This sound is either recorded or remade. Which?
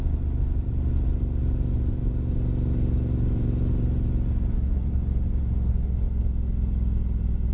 recorded